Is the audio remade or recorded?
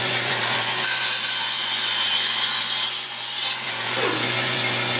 remade